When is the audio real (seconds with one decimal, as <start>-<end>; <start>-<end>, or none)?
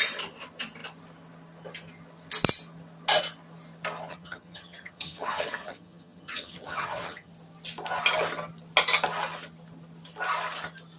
0.0-4.1; 7.3-11.0